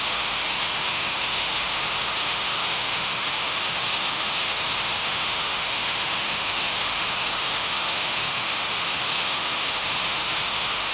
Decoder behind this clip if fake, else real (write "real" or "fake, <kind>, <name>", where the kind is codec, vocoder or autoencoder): fake, autoencoder, DAC-VAE